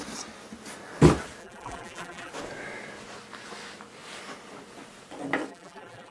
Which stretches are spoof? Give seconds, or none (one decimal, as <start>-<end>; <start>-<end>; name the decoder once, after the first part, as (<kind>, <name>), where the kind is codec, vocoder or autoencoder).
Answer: 1.4-2.3 (vocoder, BigVGAN v2); 5.5-6.1